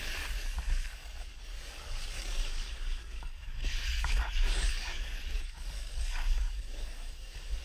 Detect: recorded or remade remade